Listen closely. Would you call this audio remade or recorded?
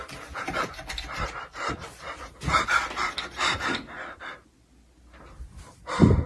recorded